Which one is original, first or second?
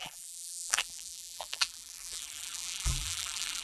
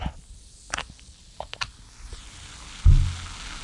second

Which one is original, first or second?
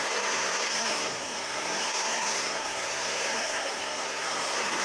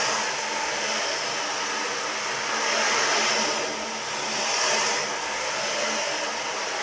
second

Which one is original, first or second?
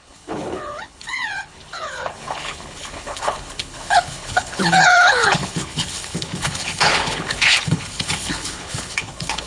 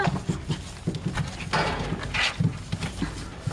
second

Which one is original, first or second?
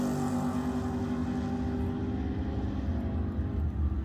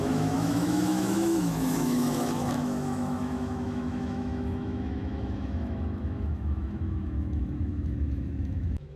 first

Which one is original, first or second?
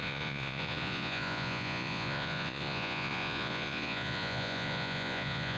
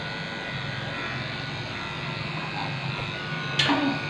second